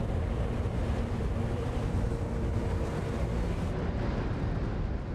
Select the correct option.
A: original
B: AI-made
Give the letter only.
A